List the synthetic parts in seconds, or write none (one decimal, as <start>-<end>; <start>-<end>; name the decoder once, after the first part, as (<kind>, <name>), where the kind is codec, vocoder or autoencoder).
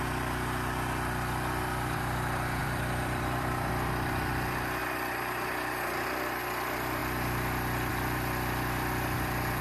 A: 2.6-3.7 (vocoder, BigVGAN v2)